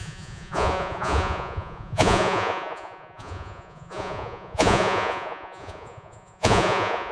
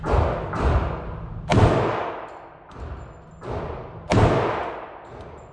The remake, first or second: first